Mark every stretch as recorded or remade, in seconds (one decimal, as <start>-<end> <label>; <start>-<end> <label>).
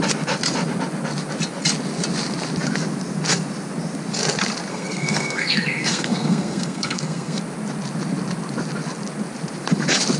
0.0-4.7 recorded; 4.7-7.4 remade; 7.4-10.2 recorded